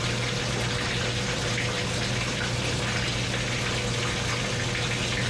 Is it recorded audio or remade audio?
recorded